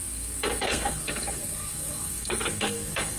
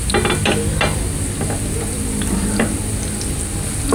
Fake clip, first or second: first